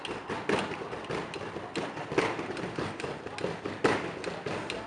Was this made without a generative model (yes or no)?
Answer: yes